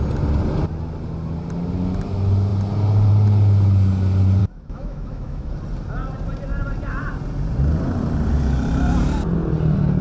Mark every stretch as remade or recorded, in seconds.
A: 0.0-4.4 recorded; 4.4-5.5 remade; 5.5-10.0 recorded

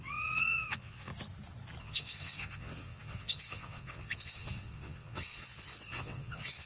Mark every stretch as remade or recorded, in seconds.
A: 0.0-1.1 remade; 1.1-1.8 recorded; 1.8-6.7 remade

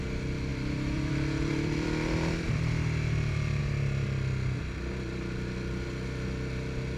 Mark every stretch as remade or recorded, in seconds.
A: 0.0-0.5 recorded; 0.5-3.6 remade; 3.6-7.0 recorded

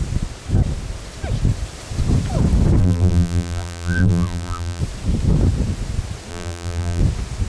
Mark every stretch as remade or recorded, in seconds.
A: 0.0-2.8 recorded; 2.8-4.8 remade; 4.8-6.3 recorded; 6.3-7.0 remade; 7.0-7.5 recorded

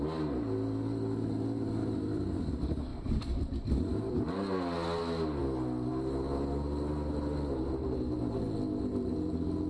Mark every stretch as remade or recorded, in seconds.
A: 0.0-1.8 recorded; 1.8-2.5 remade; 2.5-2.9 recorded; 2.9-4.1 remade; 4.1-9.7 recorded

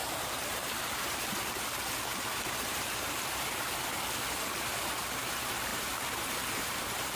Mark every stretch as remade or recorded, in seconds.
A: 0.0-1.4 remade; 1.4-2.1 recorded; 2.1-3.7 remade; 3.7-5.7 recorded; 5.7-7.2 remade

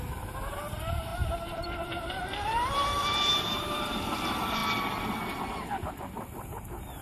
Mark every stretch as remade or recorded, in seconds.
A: 0.0-4.6 remade; 4.6-6.5 recorded; 6.5-7.0 remade